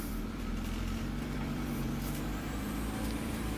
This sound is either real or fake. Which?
fake